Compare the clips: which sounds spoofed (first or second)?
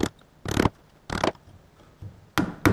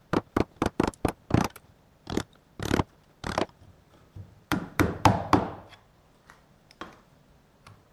second